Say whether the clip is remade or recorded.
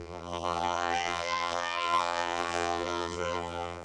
remade